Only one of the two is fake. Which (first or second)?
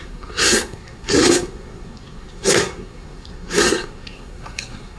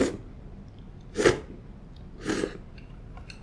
first